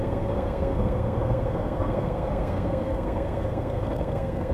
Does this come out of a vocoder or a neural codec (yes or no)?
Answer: yes